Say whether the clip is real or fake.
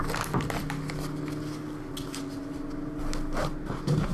real